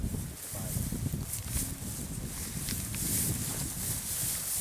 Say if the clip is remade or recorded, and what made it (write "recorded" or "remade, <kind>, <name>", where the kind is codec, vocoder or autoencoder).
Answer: recorded